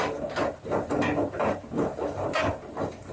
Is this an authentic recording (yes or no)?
yes